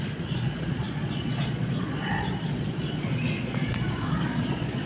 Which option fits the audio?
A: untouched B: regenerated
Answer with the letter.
B